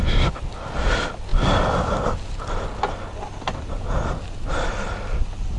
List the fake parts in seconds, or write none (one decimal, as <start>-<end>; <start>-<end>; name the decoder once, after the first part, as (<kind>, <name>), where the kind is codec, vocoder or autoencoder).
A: none